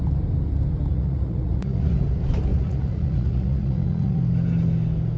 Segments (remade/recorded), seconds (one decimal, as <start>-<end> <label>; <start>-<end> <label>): 0.0-0.9 recorded; 0.9-1.9 remade; 1.9-2.5 recorded; 2.5-4.2 remade; 4.2-5.2 recorded